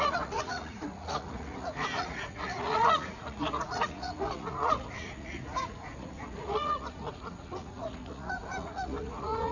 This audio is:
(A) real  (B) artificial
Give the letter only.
B